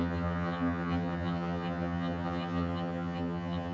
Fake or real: fake